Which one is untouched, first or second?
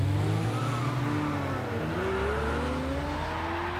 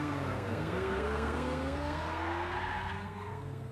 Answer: first